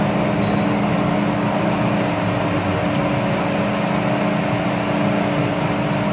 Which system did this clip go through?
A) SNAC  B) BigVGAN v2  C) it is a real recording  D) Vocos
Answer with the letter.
C